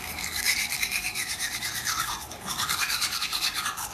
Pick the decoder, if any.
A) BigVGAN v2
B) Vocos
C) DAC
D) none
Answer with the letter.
C